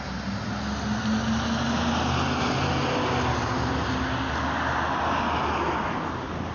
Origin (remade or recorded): recorded